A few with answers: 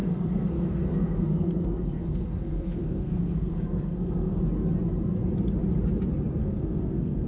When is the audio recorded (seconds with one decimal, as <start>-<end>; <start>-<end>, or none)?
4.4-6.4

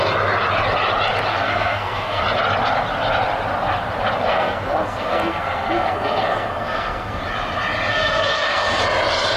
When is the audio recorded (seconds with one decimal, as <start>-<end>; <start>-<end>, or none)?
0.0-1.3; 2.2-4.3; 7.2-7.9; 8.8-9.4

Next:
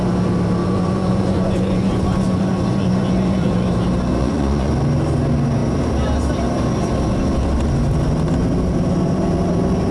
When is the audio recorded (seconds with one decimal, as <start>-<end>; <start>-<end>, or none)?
0.0-0.6; 3.7-4.2; 4.7-9.9

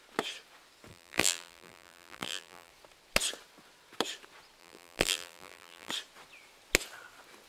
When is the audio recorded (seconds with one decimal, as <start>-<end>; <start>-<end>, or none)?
0.0-0.9; 2.7-4.6; 5.9-7.5

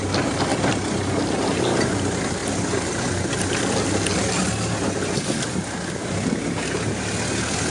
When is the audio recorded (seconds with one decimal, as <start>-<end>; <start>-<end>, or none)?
0.0-7.7

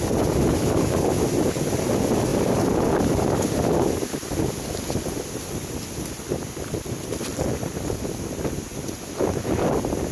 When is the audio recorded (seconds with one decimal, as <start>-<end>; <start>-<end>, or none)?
0.0-10.1

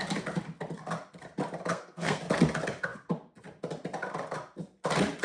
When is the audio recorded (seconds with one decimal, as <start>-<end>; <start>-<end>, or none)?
0.0-1.7; 2.2-5.2